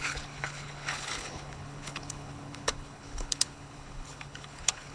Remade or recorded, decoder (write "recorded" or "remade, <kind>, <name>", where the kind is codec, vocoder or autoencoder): remade, codec, HILCodec